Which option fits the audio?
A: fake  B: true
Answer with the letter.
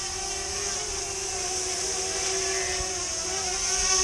B